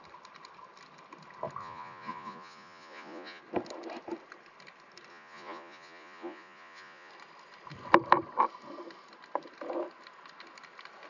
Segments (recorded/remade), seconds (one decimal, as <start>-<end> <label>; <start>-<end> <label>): 0.0-1.6 recorded; 1.6-3.4 remade; 3.4-5.1 recorded; 5.1-7.1 remade; 7.1-11.1 recorded